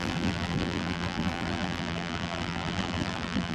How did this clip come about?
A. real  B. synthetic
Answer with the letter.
B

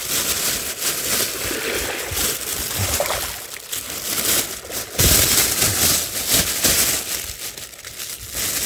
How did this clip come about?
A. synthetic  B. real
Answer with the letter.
B